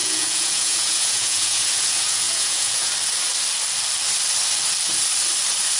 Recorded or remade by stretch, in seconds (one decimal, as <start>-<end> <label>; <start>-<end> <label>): 0.0-2.9 remade; 2.9-5.8 recorded